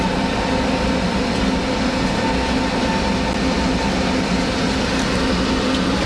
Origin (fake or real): real